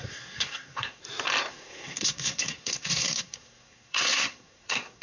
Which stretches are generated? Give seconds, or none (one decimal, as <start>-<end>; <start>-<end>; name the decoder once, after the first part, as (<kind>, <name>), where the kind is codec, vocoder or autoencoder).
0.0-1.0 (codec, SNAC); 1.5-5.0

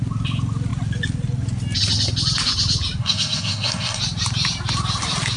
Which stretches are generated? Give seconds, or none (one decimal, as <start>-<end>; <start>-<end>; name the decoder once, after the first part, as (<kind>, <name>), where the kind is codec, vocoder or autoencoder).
3.0-4.0 (codec, SNAC)

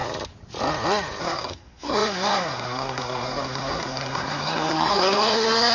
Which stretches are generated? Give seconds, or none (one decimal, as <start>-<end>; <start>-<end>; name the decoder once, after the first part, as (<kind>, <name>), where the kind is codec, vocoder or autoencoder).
1.2-5.7 (codec, SNAC)

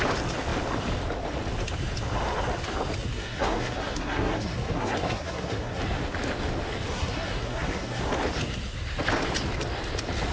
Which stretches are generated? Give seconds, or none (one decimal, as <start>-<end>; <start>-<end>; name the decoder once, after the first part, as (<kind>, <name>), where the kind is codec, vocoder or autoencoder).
3.1-5.8 (codec, SNAC); 6.9-8.0

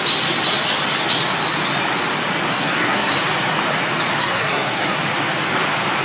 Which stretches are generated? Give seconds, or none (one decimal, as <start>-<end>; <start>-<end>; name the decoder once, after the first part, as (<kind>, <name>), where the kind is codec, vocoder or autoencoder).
2.5-3.1 (codec, SNAC); 4.2-5.0